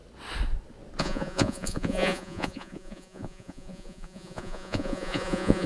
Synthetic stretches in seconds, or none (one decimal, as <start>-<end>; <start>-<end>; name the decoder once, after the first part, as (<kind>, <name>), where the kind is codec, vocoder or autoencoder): 1.0-5.7 (vocoder, Vocos)